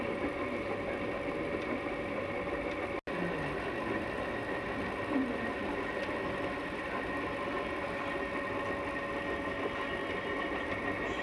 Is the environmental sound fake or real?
real